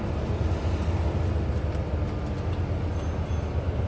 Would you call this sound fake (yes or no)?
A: no